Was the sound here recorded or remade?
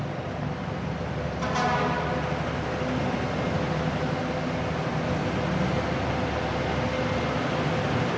recorded